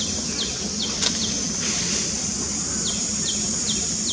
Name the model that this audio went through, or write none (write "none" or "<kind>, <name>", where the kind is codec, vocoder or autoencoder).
none